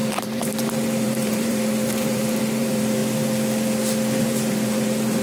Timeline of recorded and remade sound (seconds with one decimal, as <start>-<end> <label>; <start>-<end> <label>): 0.0-3.0 remade; 3.0-4.2 recorded; 4.2-5.2 remade